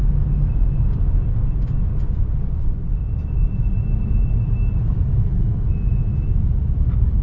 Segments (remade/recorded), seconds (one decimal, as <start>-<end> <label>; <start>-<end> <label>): 0.0-7.2 recorded